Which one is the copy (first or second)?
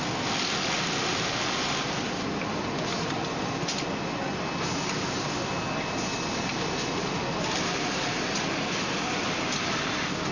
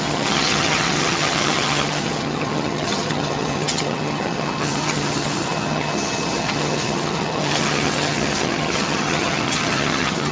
second